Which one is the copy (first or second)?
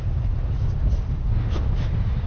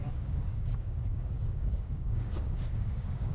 second